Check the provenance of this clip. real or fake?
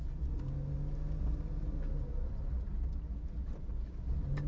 real